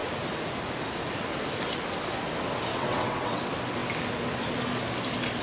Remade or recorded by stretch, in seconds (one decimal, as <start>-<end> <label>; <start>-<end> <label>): 0.0-2.7 recorded; 2.7-3.4 remade; 3.4-5.4 recorded